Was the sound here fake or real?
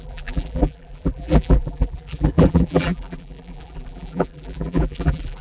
fake